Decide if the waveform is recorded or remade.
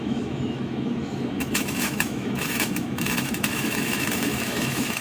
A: remade